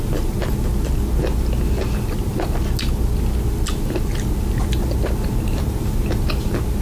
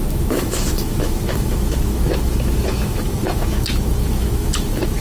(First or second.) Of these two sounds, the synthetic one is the second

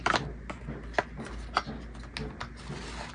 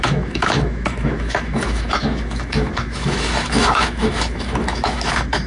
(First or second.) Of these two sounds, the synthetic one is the second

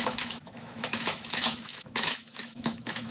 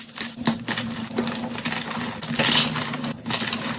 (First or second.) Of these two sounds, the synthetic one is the first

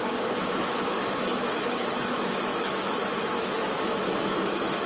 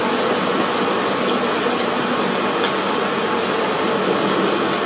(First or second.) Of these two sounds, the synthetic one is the first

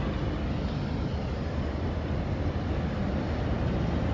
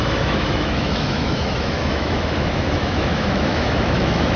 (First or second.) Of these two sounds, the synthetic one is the second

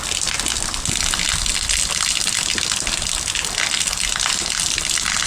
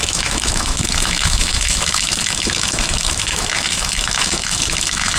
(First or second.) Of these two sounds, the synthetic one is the second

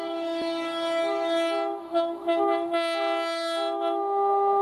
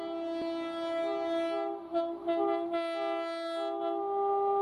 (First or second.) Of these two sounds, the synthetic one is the first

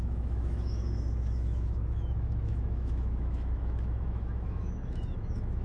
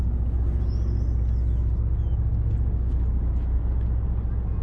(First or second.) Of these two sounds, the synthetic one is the first